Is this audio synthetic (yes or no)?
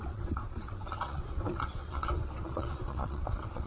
yes